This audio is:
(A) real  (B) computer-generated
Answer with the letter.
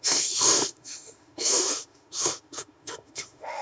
B